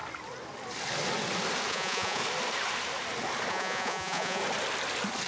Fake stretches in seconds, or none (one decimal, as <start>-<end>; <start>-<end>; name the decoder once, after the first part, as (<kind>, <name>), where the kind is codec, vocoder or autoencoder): 1.7-2.2 (vocoder, Vocos); 3.5-4.4